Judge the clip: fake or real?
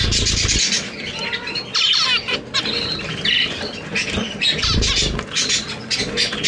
real